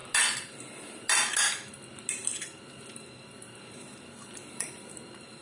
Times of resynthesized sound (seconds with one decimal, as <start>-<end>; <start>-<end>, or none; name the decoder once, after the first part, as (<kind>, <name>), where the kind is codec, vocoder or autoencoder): 3.2-5.4 (vocoder, BigVGAN v2)